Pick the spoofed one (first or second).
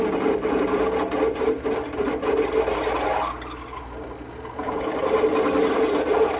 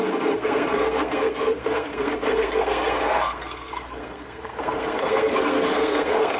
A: second